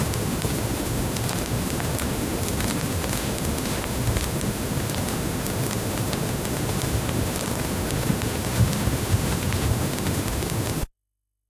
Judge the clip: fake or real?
fake